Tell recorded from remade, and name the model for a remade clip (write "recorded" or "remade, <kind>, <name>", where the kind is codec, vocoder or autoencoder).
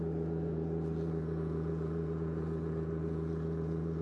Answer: remade, vocoder, Vocos